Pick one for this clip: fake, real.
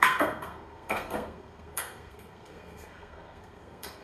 fake